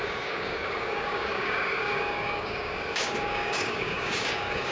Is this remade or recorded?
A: remade